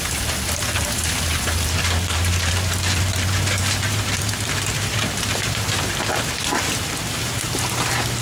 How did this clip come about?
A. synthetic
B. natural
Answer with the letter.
A